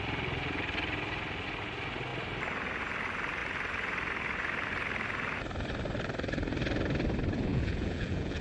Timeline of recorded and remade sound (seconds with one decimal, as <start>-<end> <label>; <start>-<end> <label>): 0.0-7.5 recorded; 7.5-8.4 remade